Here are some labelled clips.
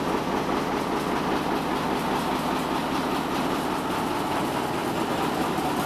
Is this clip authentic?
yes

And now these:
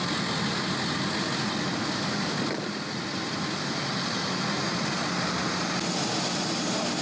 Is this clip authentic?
yes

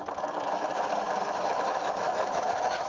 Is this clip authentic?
no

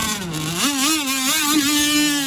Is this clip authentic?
yes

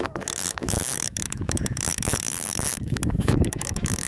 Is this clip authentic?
no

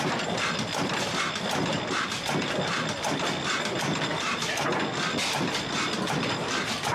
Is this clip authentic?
yes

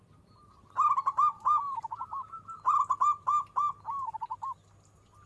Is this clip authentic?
yes